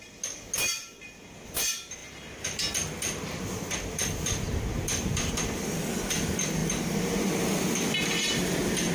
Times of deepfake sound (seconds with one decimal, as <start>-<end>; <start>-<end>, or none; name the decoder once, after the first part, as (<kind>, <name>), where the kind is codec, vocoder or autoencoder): none